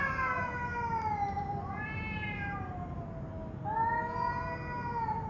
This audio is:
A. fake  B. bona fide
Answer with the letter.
B